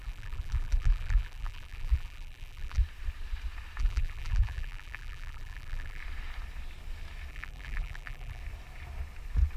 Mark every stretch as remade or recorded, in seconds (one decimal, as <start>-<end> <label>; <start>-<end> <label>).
0.0-2.8 remade; 2.8-3.8 recorded; 3.8-6.0 remade; 6.0-7.3 recorded; 7.3-8.4 remade; 8.4-9.6 recorded